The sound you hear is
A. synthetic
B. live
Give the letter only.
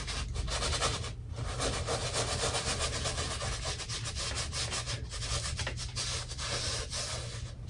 B